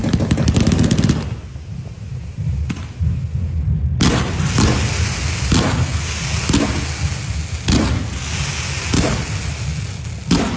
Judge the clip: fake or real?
real